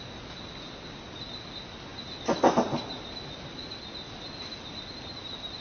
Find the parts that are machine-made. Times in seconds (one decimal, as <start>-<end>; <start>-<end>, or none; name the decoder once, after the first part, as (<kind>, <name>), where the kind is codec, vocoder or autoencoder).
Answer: none